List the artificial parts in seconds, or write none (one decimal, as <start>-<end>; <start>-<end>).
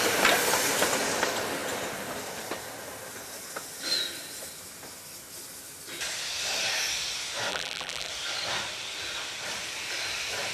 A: 7.5-8.1